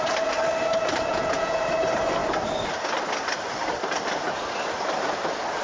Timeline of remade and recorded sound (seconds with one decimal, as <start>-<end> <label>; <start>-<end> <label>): 0.0-1.1 recorded; 1.1-1.6 remade; 1.6-5.6 recorded